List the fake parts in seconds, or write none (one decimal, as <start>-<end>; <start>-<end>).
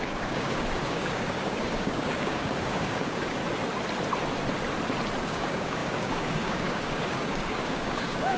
0.0-3.4; 5.2-8.4